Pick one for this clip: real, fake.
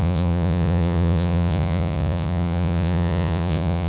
fake